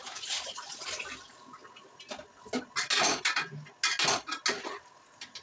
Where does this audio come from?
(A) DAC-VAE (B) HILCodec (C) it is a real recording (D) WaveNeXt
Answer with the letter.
C